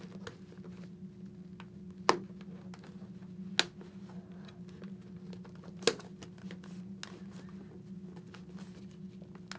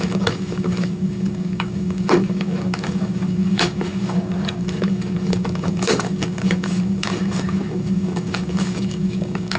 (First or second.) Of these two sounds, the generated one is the second